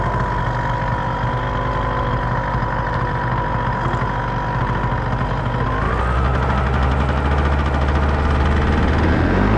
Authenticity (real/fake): real